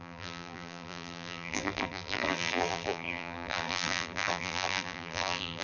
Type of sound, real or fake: fake